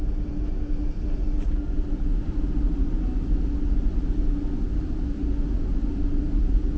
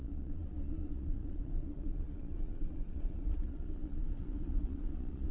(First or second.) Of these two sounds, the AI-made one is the second